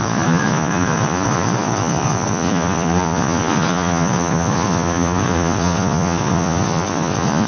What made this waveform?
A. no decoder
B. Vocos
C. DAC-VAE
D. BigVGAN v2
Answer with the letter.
B